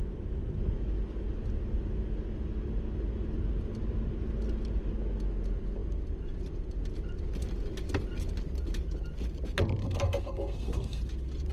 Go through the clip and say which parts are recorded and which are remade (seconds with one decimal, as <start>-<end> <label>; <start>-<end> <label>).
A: 0.0-9.8 recorded; 9.8-11.0 remade; 11.0-11.5 recorded